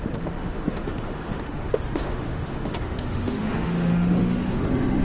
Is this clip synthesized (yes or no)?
yes